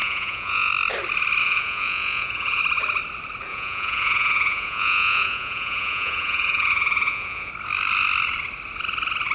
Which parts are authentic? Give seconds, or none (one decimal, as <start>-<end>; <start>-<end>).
0.7-1.4; 2.6-3.5; 7.5-9.3